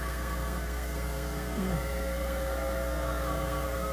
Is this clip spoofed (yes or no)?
yes